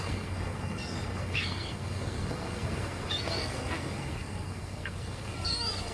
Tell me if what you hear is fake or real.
fake